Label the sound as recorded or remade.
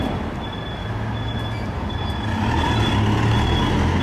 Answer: recorded